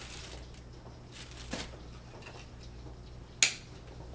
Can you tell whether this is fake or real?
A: real